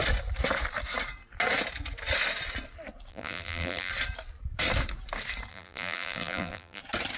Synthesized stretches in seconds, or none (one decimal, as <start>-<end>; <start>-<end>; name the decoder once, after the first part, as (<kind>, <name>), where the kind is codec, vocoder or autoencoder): 3.1-3.9 (vocoder, BigVGAN v2); 5.5-6.8